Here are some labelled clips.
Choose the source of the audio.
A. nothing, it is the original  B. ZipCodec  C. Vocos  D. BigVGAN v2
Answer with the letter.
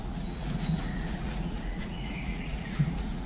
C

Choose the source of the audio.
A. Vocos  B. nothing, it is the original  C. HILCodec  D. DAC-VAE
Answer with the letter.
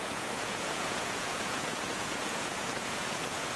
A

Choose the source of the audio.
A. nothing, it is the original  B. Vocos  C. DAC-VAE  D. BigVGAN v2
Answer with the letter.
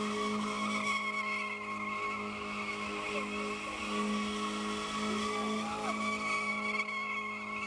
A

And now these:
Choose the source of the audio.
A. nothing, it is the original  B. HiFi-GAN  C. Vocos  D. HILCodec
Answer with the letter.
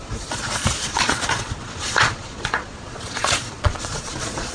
C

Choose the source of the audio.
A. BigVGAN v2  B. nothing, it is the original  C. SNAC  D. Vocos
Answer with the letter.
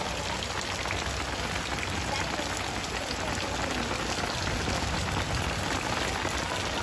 B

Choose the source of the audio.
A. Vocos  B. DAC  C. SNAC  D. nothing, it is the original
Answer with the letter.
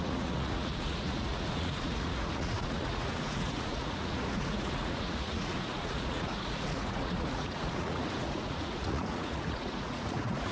A